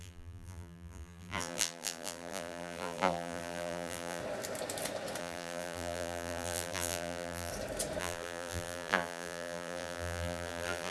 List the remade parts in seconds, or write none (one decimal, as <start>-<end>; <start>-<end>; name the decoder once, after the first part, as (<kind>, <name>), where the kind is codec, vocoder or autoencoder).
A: 0.0-4.2 (vocoder, BigVGAN v2); 5.2-7.5; 8.0-10.9